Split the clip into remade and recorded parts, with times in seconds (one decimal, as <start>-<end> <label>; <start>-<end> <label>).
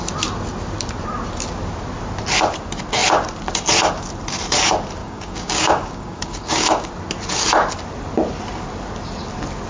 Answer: 0.0-5.0 recorded; 5.0-6.9 remade; 6.9-9.7 recorded